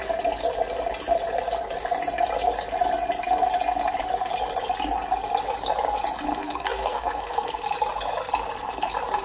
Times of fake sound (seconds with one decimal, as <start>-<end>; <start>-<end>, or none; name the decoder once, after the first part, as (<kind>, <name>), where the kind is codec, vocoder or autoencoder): 6.3-7.6 (codec, SNAC)